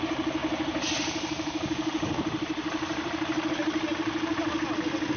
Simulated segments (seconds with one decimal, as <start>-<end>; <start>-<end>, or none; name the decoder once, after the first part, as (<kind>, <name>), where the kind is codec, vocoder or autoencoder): 0.4-3.5 (vocoder, BigVGAN v2)